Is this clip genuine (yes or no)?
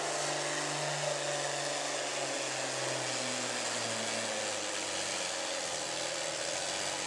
yes